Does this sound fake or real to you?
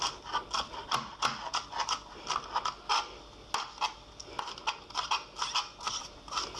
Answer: real